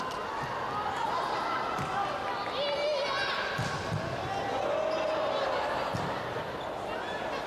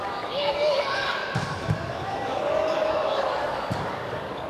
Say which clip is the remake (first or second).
second